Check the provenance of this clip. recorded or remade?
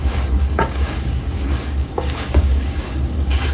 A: remade